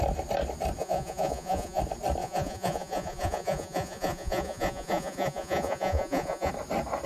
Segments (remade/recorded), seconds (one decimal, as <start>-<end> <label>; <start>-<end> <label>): 0.0-0.8 recorded; 0.8-1.8 remade; 1.8-2.2 recorded; 2.2-6.5 remade; 6.5-7.1 recorded